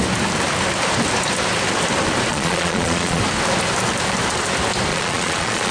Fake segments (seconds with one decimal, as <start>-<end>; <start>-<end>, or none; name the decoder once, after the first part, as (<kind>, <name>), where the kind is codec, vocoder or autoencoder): 2.3-3.2 (vocoder, Vocos); 4.9-5.7